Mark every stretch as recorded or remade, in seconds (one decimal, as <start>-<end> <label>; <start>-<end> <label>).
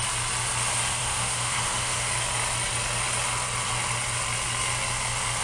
0.0-1.0 recorded; 1.0-2.1 remade; 2.1-5.4 recorded